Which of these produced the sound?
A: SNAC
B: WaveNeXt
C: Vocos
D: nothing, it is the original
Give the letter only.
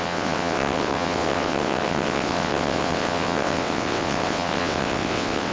B